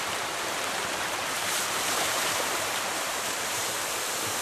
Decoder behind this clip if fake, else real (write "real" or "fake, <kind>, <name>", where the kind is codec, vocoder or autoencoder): fake, vocoder, BigVGAN v2